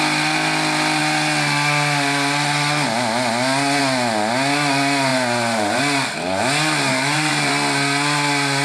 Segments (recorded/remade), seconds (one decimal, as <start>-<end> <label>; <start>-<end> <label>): 0.0-5.1 recorded; 5.1-5.8 remade; 5.8-6.9 recorded; 6.9-7.5 remade; 7.5-8.6 recorded